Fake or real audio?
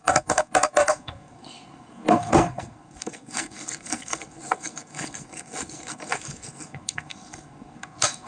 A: fake